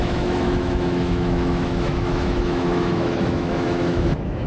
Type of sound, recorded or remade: remade